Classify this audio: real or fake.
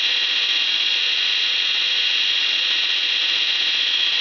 fake